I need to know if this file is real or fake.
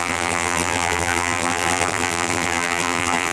fake